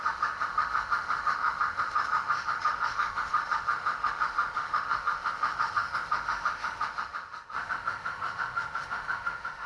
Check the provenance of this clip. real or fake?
fake